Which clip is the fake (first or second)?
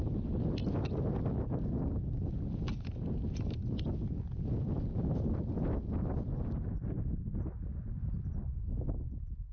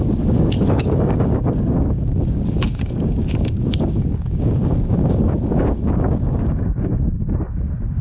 second